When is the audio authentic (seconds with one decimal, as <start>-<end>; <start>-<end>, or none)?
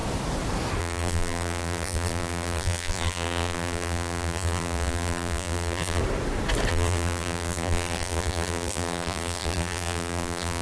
0.0-0.8; 6.0-6.7